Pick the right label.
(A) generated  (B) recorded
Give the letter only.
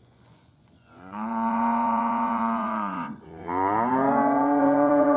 A